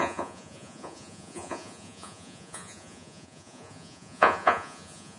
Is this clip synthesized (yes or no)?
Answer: yes